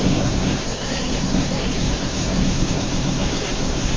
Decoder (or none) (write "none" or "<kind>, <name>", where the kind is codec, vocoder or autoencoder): codec, SNAC